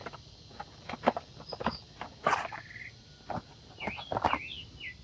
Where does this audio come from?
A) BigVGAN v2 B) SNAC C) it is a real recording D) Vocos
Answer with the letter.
C